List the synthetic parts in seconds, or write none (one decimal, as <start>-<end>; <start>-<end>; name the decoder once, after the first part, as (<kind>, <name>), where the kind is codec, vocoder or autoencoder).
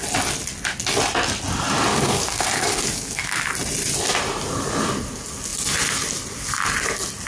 1.9-3.5 (codec, DAC)